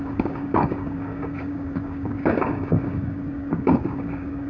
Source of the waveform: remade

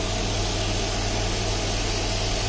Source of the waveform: recorded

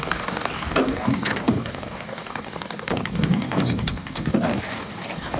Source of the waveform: remade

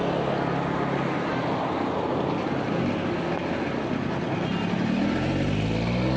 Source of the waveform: recorded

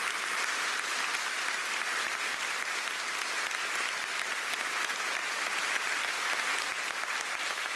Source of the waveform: recorded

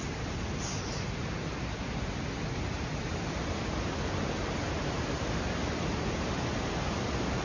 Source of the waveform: recorded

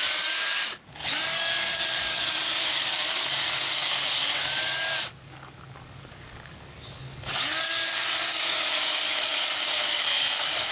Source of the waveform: remade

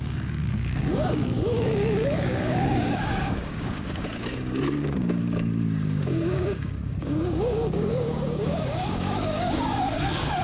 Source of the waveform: remade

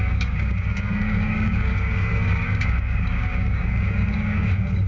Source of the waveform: remade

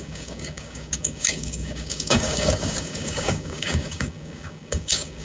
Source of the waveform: remade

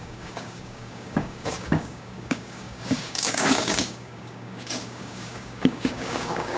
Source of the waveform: remade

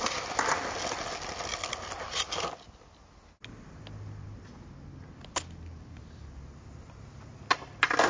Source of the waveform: recorded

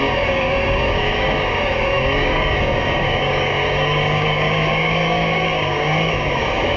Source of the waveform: remade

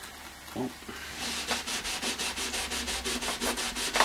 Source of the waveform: recorded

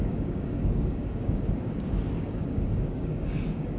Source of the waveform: remade